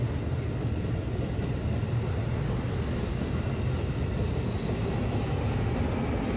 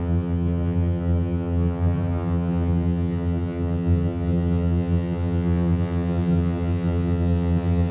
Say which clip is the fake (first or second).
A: second